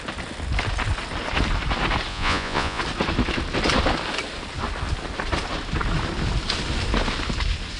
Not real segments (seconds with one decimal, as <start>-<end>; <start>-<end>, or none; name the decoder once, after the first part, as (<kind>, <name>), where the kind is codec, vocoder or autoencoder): 2.1-2.8 (vocoder, Vocos)